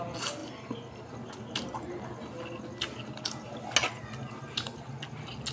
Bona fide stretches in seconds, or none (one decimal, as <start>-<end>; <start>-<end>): 0.0-5.5